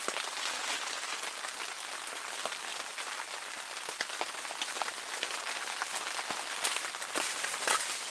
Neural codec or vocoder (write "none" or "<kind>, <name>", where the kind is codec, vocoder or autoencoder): none